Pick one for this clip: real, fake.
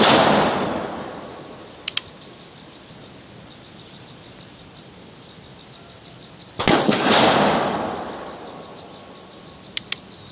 real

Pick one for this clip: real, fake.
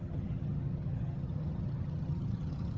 fake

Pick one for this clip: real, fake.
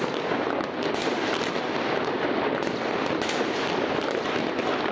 real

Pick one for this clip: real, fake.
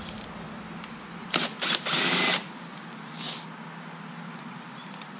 real